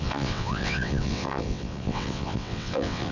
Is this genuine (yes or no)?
no